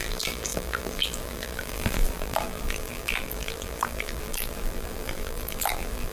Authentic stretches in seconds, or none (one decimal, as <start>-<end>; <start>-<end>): none